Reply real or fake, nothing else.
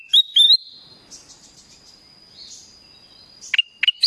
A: real